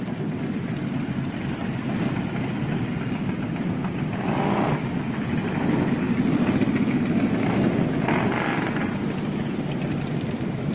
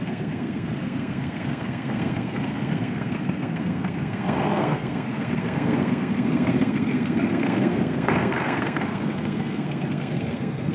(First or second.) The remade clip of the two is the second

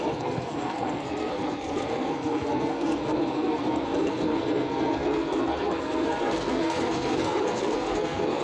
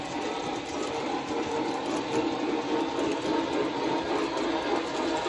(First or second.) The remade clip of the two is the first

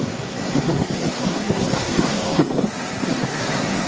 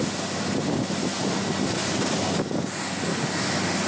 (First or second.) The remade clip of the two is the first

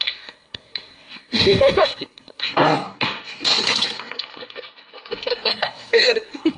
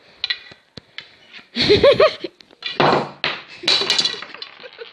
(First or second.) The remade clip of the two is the first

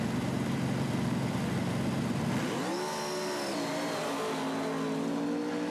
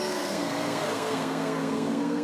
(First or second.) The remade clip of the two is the second